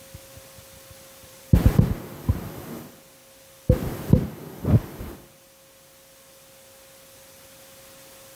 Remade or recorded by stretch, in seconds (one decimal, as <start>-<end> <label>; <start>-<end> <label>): 0.0-1.2 recorded; 1.2-1.9 remade; 1.9-8.4 recorded